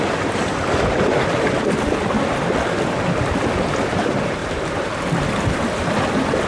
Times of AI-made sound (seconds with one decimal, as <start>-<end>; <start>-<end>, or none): 4.4-4.9